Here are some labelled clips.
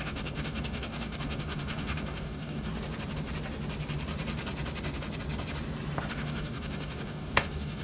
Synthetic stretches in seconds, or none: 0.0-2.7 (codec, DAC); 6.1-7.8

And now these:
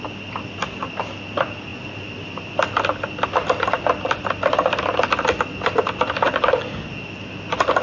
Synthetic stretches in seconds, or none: none